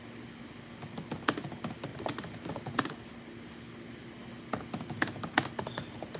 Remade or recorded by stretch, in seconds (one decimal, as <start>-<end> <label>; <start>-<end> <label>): 0.0-1.9 recorded; 1.9-2.5 remade; 2.5-6.2 recorded